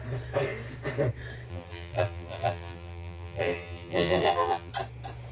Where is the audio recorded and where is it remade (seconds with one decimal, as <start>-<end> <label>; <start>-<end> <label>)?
0.0-1.5 recorded; 1.5-4.7 remade; 4.7-5.3 recorded